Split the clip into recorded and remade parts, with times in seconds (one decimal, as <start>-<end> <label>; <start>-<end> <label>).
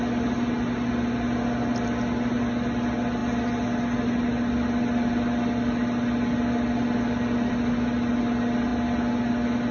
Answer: 0.0-9.7 recorded